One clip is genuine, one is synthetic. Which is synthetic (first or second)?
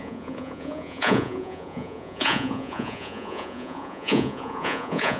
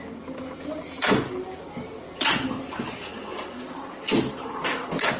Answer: first